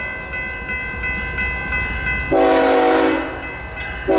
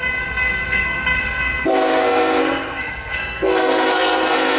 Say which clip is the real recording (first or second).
first